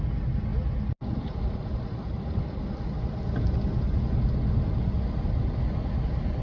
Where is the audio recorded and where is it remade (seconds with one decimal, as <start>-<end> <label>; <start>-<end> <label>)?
0.0-6.4 recorded

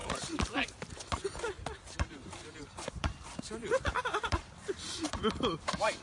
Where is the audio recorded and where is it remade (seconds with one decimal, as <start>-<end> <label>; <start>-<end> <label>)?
0.0-2.1 recorded; 2.1-6.0 remade

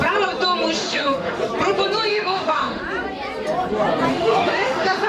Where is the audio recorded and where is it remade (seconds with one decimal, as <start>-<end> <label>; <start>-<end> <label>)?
0.0-0.8 recorded; 0.8-1.4 remade; 1.4-2.1 recorded; 2.1-2.8 remade; 2.8-4.1 recorded; 4.1-5.1 remade

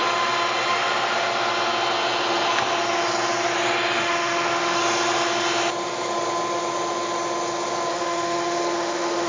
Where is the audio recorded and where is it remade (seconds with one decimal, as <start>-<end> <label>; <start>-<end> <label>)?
0.0-4.0 recorded; 4.0-4.8 remade; 4.8-7.9 recorded; 7.9-9.3 remade

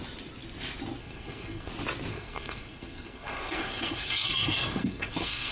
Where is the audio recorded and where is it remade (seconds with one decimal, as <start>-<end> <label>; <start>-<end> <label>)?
0.0-1.0 recorded; 1.0-1.7 remade; 1.7-2.1 recorded; 2.1-5.5 remade